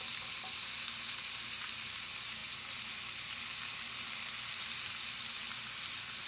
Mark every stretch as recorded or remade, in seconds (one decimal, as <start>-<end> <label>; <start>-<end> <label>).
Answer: 0.0-6.3 recorded

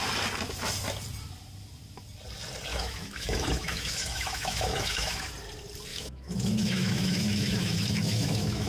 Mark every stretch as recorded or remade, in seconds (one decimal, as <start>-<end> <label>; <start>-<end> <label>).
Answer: 0.0-2.7 recorded; 2.7-5.3 remade; 5.3-5.9 recorded; 5.9-8.7 remade

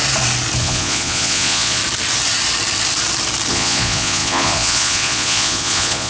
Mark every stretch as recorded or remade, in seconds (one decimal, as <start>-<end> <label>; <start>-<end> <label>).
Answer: 0.0-0.6 recorded; 0.6-1.8 remade; 1.8-3.5 recorded; 3.5-6.1 remade

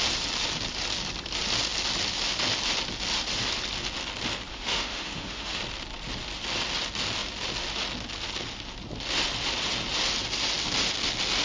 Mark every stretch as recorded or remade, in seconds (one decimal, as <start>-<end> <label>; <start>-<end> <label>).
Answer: 0.0-4.5 recorded; 4.5-5.6 remade; 5.6-11.4 recorded

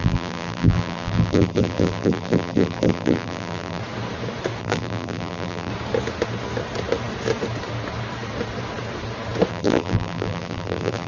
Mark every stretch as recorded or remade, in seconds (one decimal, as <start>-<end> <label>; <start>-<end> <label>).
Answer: 0.0-3.8 remade; 3.8-4.6 recorded; 4.6-5.7 remade; 5.7-9.5 recorded; 9.5-11.1 remade

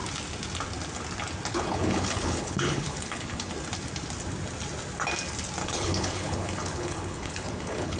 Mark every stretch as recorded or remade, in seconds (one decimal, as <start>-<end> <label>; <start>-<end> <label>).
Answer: 0.0-1.5 recorded; 1.5-3.5 remade; 3.5-5.6 recorded; 5.6-8.0 remade